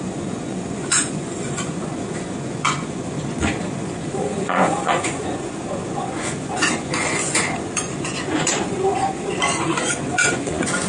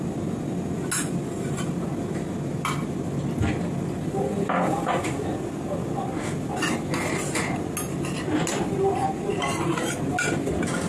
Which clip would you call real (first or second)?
second